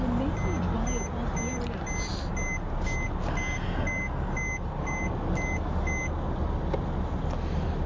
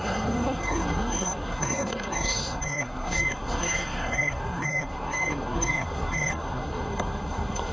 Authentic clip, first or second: first